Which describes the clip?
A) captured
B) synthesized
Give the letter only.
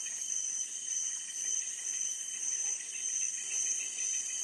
A